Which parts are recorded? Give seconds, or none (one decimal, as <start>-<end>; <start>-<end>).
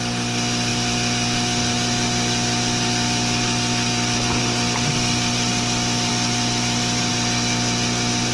0.0-8.3